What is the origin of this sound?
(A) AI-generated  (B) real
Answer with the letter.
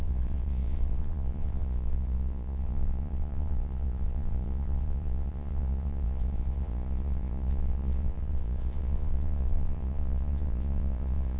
A